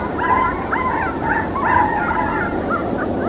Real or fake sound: real